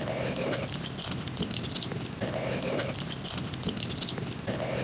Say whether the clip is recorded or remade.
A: recorded